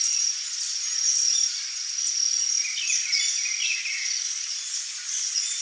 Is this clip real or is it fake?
real